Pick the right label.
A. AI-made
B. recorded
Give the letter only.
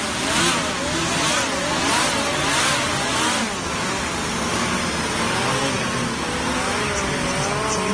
B